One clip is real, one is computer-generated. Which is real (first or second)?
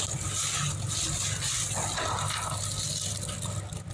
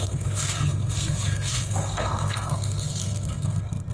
first